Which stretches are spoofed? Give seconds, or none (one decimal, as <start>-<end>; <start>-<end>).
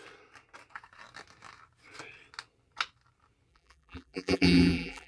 3.5-5.1